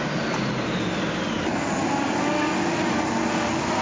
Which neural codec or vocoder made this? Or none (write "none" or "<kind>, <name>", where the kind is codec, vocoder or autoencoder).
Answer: none